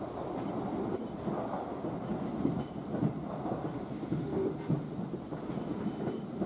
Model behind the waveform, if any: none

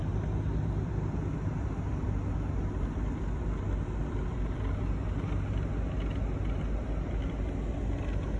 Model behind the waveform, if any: none